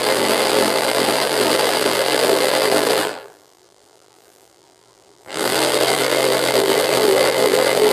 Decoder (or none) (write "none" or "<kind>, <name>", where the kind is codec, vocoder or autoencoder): vocoder, BigVGAN v2